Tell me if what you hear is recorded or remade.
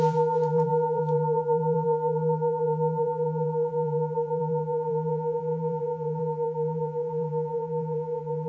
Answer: remade